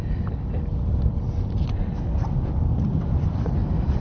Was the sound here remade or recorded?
recorded